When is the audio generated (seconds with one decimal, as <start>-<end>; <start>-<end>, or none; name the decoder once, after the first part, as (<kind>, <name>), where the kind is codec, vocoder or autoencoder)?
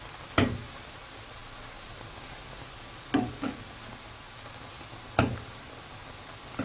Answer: none